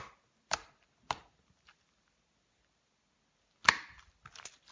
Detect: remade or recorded recorded